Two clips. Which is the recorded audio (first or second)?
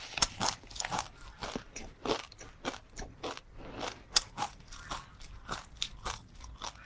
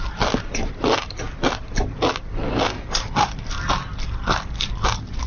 second